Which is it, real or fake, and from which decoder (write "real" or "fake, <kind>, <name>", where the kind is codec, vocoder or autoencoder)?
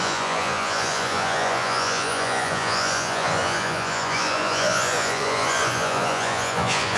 fake, vocoder, Vocos